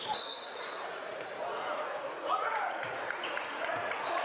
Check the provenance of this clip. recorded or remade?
remade